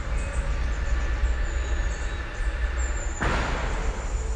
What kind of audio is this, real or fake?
real